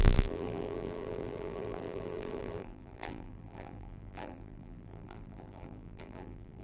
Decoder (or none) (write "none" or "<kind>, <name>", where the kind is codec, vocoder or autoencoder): vocoder, BigVGAN v2